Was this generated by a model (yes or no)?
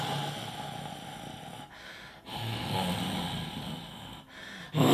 no